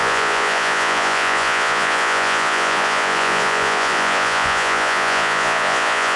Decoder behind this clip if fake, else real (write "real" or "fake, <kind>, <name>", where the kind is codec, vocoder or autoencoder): fake, vocoder, Vocos